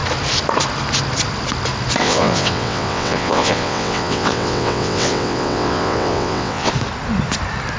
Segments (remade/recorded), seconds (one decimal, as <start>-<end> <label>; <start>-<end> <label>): 0.0-2.0 recorded; 2.0-6.7 remade; 6.7-7.8 recorded